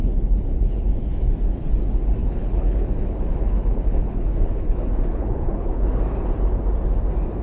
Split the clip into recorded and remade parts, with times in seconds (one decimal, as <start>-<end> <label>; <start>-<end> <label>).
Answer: 0.0-1.3 remade; 1.3-2.2 recorded; 2.2-6.0 remade; 6.0-7.4 recorded